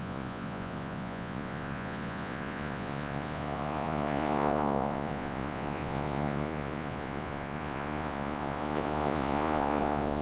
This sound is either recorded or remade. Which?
remade